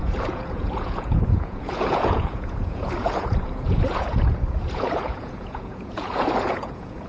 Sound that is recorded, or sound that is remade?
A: remade